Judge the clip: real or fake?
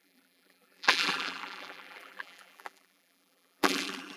fake